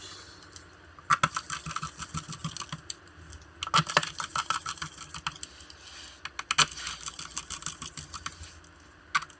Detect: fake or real real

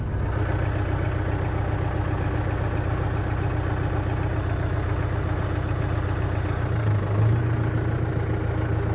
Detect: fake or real real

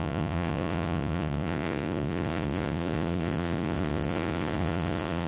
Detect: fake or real fake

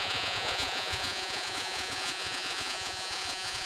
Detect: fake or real fake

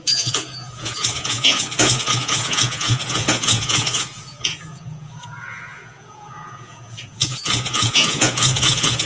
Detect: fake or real fake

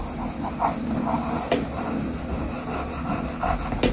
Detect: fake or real real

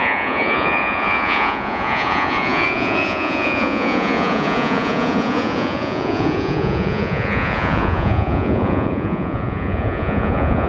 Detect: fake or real fake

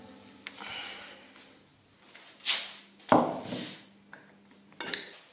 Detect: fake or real real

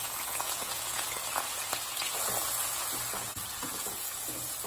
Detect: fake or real fake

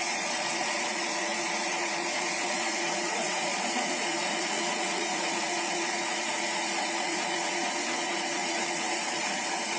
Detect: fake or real fake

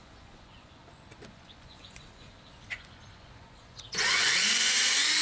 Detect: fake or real fake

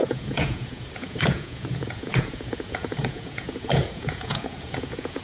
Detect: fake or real fake